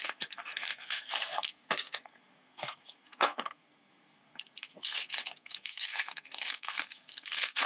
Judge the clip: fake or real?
fake